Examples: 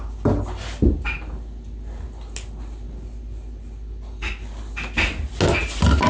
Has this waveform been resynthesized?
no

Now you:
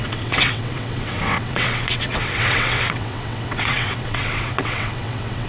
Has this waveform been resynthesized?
yes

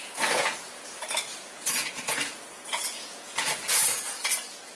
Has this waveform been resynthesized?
yes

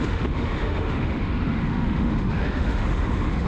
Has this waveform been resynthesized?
yes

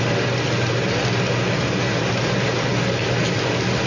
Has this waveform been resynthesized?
no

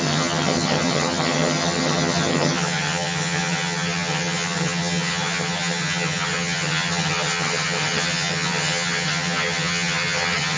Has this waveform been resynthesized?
yes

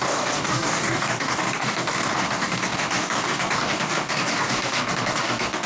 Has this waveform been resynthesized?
yes